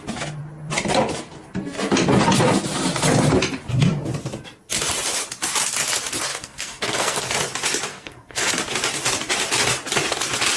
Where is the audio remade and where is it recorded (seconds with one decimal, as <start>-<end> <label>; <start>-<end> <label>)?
0.0-6.3 recorded; 6.3-7.2 remade; 7.2-7.9 recorded; 7.9-8.5 remade; 8.5-10.6 recorded